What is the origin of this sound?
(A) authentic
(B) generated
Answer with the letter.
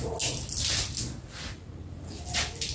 A